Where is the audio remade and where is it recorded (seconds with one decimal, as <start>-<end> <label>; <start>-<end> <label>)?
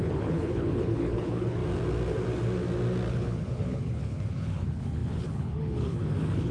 0.0-1.6 remade; 1.6-3.1 recorded; 3.1-6.5 remade